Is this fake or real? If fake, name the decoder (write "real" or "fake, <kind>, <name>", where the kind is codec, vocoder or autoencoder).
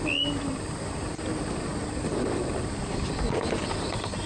real